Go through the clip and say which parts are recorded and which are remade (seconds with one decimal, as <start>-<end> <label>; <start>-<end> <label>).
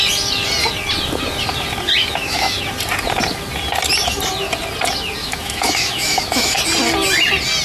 0.0-2.0 recorded; 2.0-2.6 remade; 2.6-5.2 recorded; 5.2-6.6 remade; 6.6-7.6 recorded